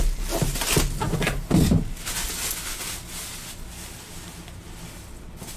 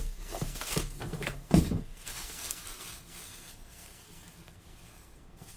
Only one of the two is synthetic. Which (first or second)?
second